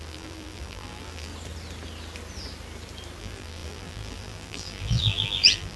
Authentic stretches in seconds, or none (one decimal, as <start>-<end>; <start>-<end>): 1.3-3.2